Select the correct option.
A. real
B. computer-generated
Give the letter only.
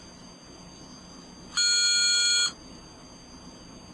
A